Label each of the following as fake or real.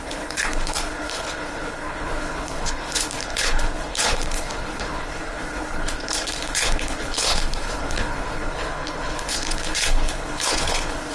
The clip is fake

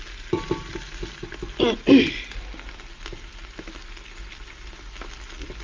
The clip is real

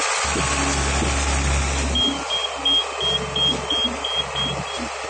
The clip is real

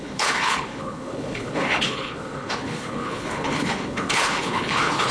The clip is fake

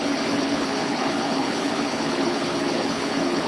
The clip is fake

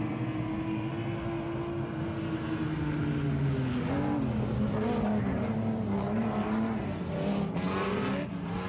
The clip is real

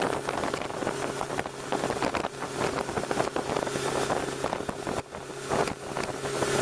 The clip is real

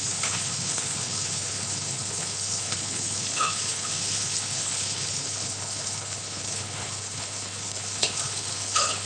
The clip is fake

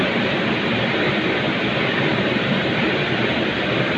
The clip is real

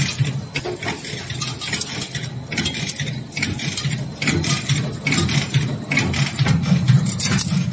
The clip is real